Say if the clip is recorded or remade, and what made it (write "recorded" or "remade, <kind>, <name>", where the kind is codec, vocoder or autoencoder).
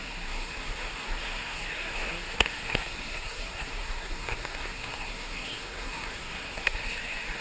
remade, codec, SNAC